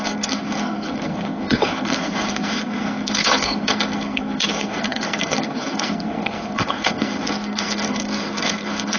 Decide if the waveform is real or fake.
fake